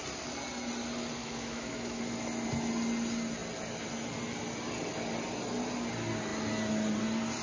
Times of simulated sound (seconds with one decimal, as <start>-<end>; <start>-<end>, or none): 1.2-2.0